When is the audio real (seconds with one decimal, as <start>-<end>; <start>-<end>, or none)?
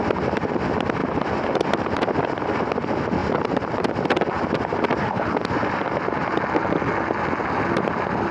0.0-1.0; 2.3-3.2; 4.3-8.3